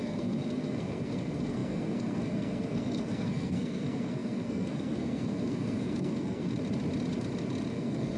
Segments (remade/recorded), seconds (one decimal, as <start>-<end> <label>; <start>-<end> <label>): 0.0-6.5 remade; 6.5-7.7 recorded; 7.7-8.2 remade